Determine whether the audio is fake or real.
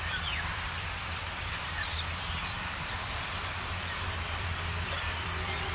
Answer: fake